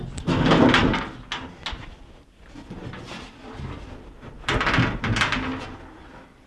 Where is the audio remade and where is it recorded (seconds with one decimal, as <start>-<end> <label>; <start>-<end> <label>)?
0.0-0.8 remade; 0.8-2.4 recorded; 2.4-6.5 remade